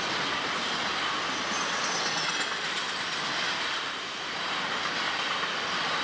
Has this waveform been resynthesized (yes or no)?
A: no